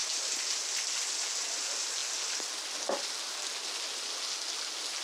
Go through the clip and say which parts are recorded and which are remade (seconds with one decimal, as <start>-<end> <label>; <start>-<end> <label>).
0.0-5.0 recorded